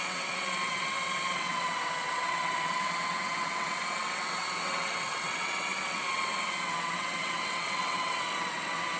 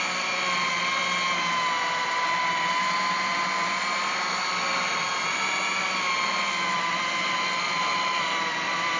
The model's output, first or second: first